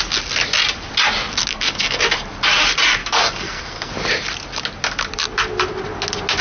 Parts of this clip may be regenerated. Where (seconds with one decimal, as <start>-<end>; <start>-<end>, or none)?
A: 1.5-2.0; 3.0-3.9